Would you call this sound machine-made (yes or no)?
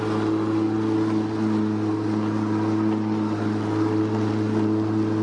no